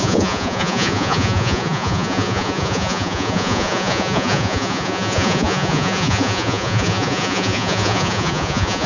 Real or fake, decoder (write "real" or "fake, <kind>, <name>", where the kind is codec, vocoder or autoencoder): fake, vocoder, Vocos